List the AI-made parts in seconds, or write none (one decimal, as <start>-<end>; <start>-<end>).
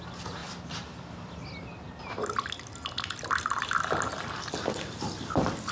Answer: none